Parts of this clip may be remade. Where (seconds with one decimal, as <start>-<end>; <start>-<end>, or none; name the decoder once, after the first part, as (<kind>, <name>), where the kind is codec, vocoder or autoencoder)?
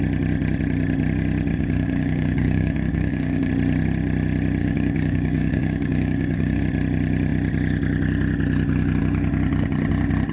1.5-3.5 (codec, DAC); 4.6-6.6